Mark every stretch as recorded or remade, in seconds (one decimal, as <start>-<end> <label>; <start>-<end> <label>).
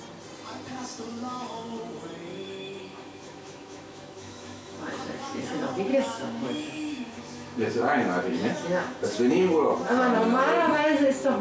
0.0-1.1 recorded; 1.1-1.8 remade; 1.8-2.3 recorded; 2.3-5.5 remade; 5.5-5.9 recorded; 5.9-9.3 remade; 9.3-11.4 recorded